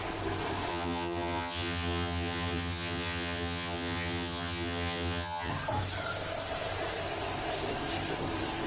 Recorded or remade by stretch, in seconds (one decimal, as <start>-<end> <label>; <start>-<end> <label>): 0.0-0.7 recorded; 0.7-5.5 remade; 5.5-8.7 recorded